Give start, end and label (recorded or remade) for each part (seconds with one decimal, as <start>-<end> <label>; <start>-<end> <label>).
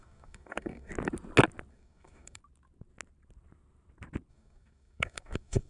0.0-0.9 remade; 0.9-1.7 recorded; 1.7-2.4 remade; 2.4-4.3 recorded; 4.3-5.7 remade